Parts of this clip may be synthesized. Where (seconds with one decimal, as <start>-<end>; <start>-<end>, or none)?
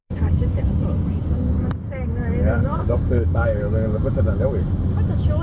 0.0-0.6; 2.7-3.6